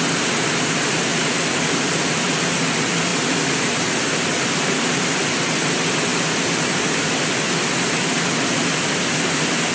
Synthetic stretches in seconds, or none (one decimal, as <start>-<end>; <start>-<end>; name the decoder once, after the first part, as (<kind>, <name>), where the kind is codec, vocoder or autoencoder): 1.1-2.6 (vocoder, BigVGAN v2); 3.1-5.0; 6.1-7.1